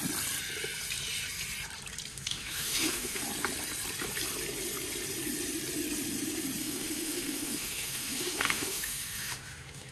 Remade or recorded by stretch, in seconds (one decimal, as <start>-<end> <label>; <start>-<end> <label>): 0.0-2.1 recorded; 2.1-3.2 remade; 3.2-6.6 recorded; 6.6-9.9 remade